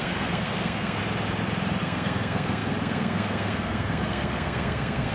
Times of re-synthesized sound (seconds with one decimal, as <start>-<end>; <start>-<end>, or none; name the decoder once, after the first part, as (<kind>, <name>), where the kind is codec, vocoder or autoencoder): 0.0-1.0 (codec, SNAC); 1.8-5.1